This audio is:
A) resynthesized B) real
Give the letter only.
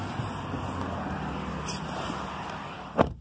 B